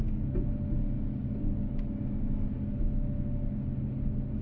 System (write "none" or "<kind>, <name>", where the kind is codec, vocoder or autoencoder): none